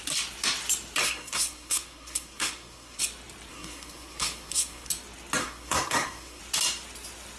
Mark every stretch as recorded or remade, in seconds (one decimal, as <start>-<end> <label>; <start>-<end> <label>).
0.0-1.0 recorded; 1.0-3.0 remade; 3.0-3.5 recorded; 3.5-4.9 remade; 4.9-5.4 recorded; 5.4-6.4 remade; 6.4-7.4 recorded